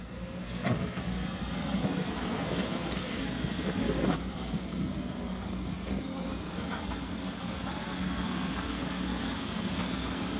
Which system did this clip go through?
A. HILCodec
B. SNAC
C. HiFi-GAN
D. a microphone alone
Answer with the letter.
B